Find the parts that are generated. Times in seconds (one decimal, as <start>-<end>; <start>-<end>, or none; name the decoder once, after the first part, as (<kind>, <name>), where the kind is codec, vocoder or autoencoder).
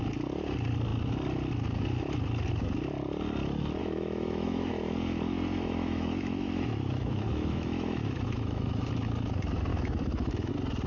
3.8-4.7 (autoencoder, DAC-VAE); 5.5-8.9; 9.7-10.5